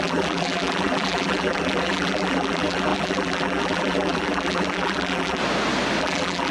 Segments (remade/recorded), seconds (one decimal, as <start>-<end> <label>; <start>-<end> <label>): 0.0-5.4 remade; 5.4-6.0 recorded; 6.0-6.5 remade